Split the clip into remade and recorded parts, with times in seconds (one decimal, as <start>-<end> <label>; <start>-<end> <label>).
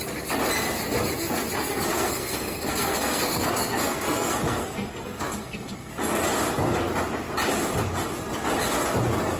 0.0-1.6 recorded; 1.6-5.9 remade; 5.9-9.4 recorded